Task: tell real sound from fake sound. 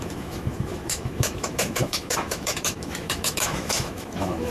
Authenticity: fake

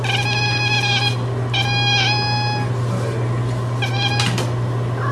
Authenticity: real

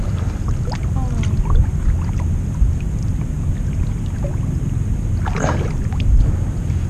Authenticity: real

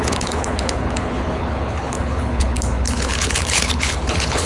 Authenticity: fake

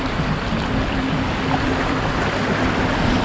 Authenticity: real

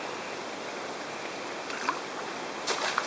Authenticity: fake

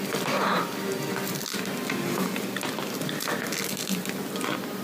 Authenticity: real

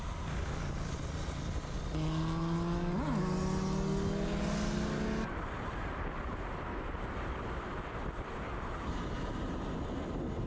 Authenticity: real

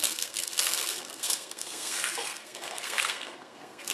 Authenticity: fake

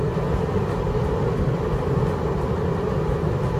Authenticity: real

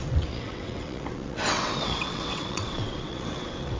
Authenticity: fake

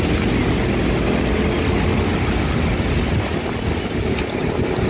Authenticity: real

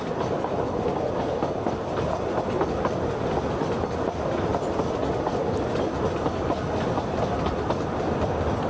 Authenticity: real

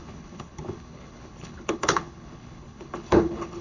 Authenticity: fake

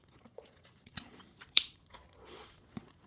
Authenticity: fake